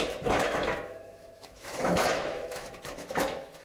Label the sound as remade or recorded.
remade